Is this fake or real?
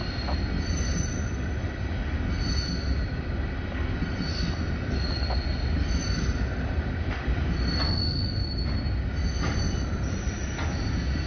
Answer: real